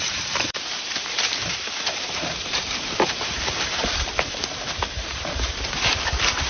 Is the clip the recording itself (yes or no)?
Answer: no